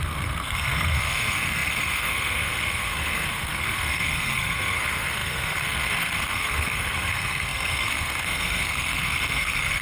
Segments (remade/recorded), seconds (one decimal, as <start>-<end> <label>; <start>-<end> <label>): 0.0-9.8 remade